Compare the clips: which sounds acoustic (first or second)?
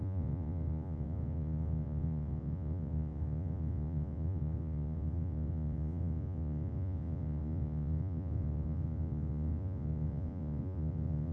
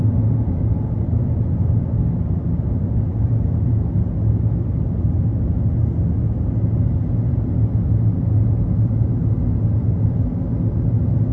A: second